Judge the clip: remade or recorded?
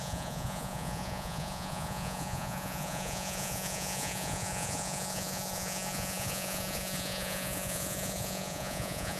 remade